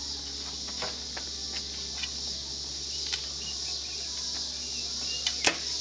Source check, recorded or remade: recorded